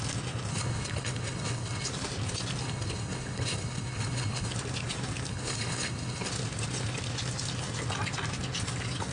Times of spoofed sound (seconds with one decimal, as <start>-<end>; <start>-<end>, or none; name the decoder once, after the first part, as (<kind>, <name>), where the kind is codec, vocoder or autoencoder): 0.5-1.9 (codec, HILCodec); 2.6-4.5; 5.3-6.3